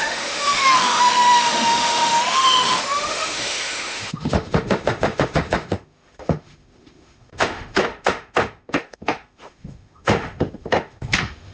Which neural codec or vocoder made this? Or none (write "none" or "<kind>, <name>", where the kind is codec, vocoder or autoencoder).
autoencoder, DAC-VAE